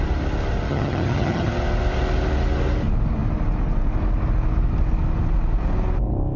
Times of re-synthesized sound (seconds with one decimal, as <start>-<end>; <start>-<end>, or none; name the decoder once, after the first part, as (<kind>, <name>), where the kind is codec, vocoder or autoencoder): 0.7-1.5 (vocoder, HiFi-GAN)

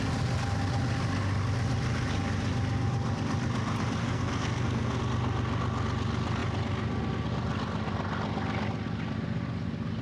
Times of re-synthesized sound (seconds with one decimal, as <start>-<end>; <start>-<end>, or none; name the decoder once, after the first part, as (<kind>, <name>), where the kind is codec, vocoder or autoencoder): 4.0-5.0 (codec, SNAC)

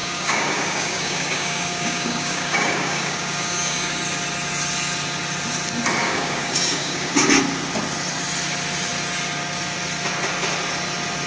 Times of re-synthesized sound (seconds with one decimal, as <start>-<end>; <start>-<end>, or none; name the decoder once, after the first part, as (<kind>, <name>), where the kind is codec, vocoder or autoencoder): 0.0-3.9 (codec, DAC); 6.0-7.3

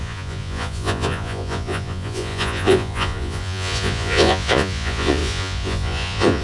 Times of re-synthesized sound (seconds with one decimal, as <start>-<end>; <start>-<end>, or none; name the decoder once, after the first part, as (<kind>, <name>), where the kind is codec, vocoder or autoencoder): 0.0-6.4 (vocoder, Vocos)

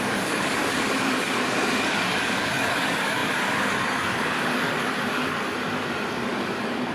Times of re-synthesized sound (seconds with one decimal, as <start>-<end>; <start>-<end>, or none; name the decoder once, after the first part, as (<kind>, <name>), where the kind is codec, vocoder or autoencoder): 0.0-5.5 (codec, DAC); 6.1-6.9

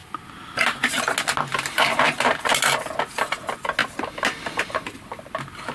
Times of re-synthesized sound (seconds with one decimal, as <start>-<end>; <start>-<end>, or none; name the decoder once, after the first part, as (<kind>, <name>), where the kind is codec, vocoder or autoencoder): 1.5-2.5 (vocoder, BigVGAN v2)

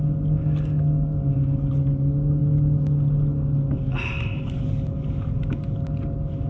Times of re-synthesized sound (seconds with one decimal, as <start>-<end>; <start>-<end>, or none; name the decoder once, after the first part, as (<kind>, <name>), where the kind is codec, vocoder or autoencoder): none

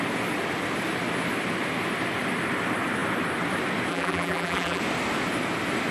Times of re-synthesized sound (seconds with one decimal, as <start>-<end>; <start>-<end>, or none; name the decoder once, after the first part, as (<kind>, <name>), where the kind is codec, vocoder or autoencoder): 3.9-4.8 (vocoder, BigVGAN v2)